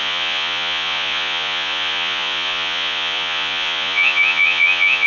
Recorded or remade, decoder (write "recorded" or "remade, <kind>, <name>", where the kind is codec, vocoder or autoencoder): remade, vocoder, Vocos